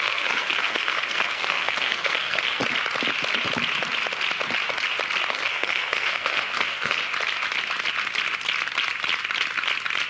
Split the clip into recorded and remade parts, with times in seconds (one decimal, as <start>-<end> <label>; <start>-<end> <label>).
0.0-2.6 remade; 2.6-5.3 recorded; 5.3-7.0 remade; 7.0-10.1 recorded